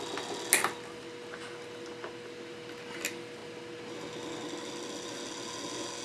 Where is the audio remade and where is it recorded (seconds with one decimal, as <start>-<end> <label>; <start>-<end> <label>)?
0.0-6.0 recorded